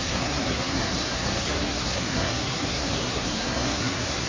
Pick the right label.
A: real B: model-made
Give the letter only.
B